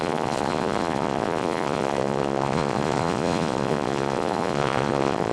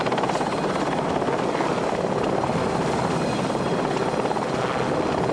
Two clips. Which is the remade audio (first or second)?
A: first